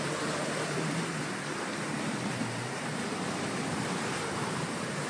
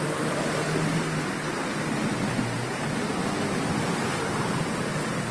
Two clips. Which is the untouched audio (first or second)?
second